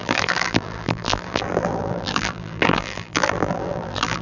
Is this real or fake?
fake